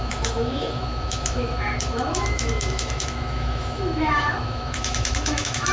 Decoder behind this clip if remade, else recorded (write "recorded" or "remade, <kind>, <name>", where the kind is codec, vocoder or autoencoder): remade, autoencoder, DAC-VAE